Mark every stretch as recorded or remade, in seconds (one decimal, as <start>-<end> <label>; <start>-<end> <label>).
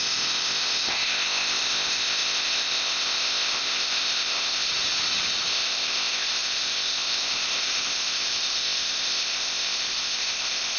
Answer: 0.0-4.7 remade; 4.7-5.5 recorded; 5.5-10.8 remade